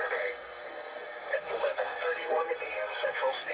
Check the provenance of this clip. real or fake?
fake